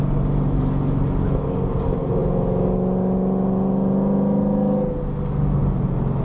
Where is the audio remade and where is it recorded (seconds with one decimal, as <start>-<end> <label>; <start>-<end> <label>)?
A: 0.0-6.2 recorded